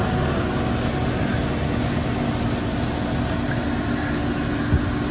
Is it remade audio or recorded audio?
recorded